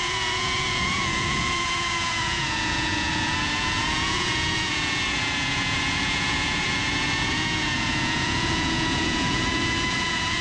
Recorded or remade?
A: remade